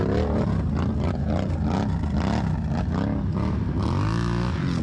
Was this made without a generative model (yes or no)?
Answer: yes